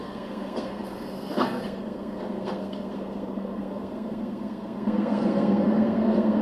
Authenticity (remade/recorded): remade